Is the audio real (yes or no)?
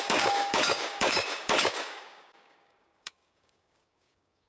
no